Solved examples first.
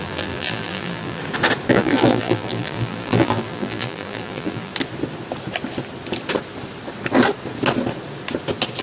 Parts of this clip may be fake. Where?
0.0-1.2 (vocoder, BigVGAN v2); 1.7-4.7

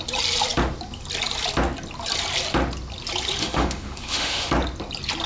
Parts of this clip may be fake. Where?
3.4-4.5 (autoencoder, DAC-VAE)

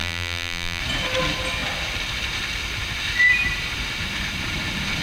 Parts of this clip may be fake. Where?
0.0-0.8 (vocoder, BigVGAN v2)

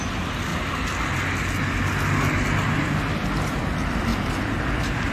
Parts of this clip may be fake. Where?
4.1-5.1 (vocoder, BigVGAN v2)

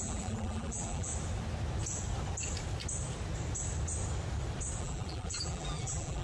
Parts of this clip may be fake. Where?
0.0-1.1 (vocoder, BigVGAN v2); 4.8-6.2